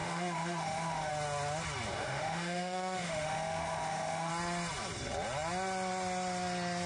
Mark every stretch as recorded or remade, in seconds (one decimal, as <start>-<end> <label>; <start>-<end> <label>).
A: 0.0-1.1 remade; 1.1-1.9 recorded; 1.9-4.3 remade; 4.3-6.9 recorded